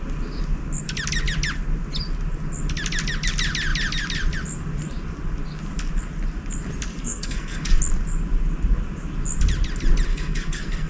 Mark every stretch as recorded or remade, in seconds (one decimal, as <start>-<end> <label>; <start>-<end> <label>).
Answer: 0.0-6.9 recorded; 6.9-7.8 remade; 7.8-10.1 recorded; 10.1-10.9 remade